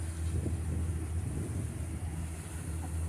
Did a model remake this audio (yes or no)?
no